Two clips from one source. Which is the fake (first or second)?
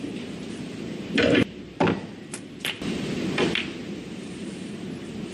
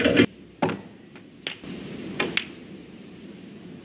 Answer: first